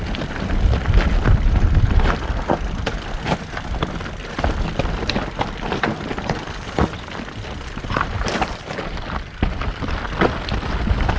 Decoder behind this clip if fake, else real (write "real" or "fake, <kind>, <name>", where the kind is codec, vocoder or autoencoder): real